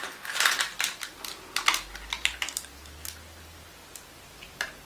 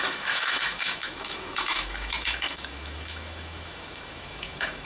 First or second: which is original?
first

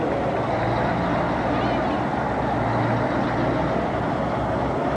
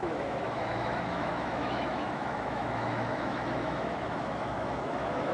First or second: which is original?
first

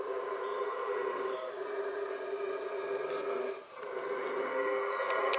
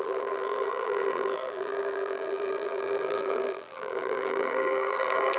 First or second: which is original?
first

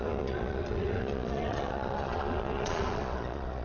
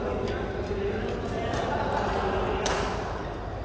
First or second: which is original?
second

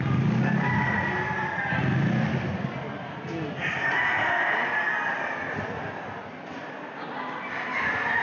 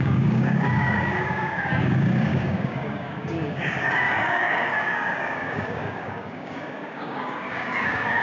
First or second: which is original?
first